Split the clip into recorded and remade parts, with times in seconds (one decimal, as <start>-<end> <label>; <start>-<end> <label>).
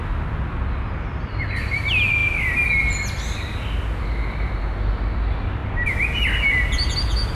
0.0-7.3 recorded